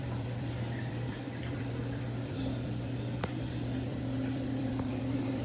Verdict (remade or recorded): remade